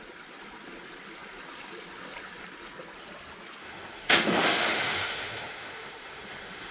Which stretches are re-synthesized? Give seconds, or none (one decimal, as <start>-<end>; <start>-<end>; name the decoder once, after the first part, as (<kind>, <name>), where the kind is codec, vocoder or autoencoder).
3.6-6.7 (autoencoder, DAC-VAE)